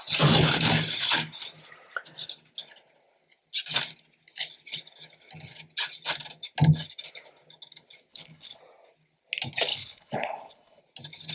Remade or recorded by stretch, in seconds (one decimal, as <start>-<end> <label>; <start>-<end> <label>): 0.0-8.1 recorded; 8.1-8.6 remade; 8.6-9.7 recorded; 9.7-10.8 remade; 10.8-11.3 recorded